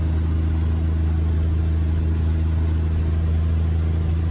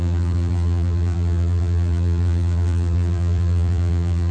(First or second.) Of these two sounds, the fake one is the second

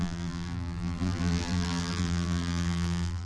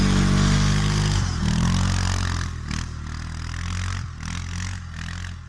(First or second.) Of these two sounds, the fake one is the first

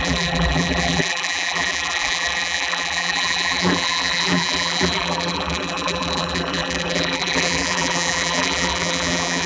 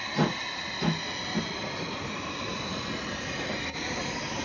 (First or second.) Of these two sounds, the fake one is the first